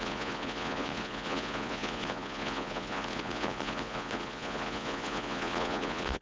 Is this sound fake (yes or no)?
yes